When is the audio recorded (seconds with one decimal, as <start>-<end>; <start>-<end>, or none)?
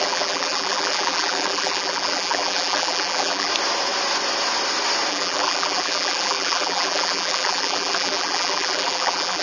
3.5-5.1